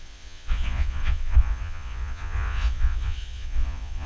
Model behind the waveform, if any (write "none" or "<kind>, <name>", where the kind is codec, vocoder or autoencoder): vocoder, Vocos